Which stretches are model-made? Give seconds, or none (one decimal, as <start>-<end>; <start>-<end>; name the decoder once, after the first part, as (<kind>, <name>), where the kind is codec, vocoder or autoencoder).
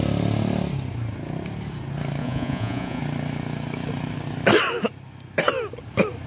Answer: 2.2-3.0 (vocoder, Vocos)